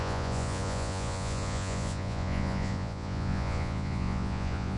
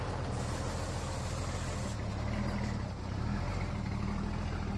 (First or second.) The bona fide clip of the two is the second